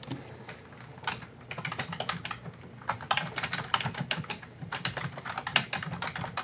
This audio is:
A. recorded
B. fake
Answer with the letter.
A